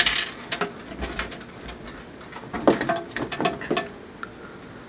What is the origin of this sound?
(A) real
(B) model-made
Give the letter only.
A